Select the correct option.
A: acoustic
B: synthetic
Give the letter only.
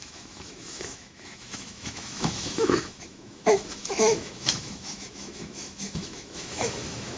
B